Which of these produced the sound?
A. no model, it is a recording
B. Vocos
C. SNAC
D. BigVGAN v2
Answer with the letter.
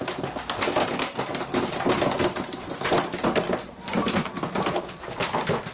A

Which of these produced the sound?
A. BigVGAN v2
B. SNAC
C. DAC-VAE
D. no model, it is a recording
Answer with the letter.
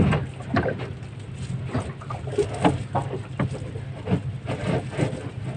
D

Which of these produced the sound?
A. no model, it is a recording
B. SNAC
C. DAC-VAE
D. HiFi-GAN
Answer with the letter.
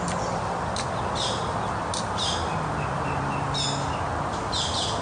A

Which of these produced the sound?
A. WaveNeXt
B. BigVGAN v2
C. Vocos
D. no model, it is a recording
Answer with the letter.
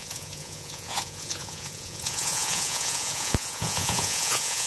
C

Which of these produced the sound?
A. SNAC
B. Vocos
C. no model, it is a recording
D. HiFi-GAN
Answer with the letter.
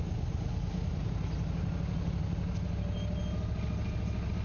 C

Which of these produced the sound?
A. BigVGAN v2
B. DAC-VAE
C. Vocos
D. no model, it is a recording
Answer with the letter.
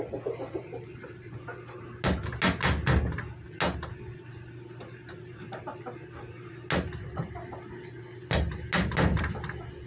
D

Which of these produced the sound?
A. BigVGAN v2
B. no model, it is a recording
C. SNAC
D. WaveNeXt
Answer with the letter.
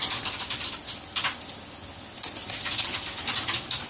B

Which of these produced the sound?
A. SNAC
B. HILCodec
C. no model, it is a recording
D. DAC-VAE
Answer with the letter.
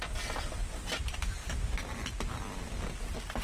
C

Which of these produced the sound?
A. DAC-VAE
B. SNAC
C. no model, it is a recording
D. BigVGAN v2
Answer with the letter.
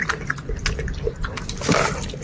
C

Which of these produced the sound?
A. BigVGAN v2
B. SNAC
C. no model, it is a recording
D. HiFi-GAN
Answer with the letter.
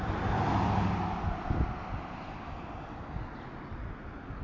C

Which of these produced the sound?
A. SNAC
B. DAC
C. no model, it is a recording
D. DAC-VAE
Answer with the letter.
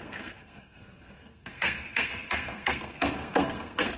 A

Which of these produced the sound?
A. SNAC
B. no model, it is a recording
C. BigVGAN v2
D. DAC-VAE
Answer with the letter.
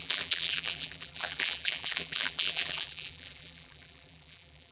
C